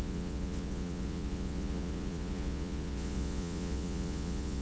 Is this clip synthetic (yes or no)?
yes